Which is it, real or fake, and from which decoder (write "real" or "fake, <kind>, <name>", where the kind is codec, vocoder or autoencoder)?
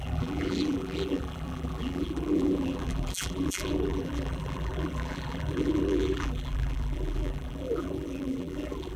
fake, vocoder, BigVGAN v2